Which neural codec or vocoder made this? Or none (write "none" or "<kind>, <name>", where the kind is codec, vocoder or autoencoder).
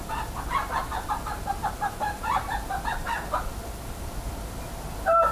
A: none